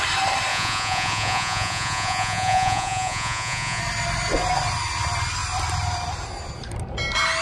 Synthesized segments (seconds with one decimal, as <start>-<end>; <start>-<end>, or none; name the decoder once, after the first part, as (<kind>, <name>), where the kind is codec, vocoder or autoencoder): 0.5-3.8 (vocoder, Vocos)